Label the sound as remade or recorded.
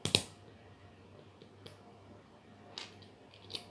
recorded